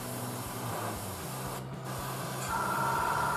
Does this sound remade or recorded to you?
recorded